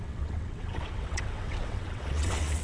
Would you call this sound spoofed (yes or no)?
yes